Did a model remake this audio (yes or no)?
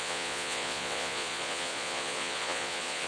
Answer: yes